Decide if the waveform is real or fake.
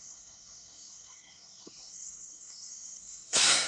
fake